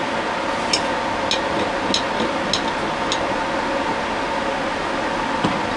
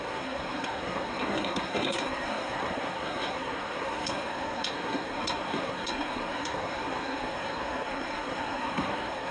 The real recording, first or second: first